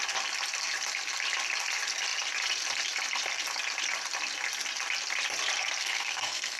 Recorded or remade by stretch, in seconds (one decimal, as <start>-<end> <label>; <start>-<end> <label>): 0.0-5.8 recorded; 5.8-6.6 remade